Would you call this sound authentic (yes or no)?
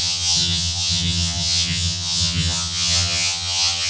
no